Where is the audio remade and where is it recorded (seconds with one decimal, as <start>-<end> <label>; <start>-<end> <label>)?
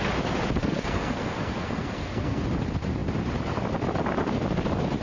0.0-0.6 recorded; 0.6-2.4 remade; 2.4-5.0 recorded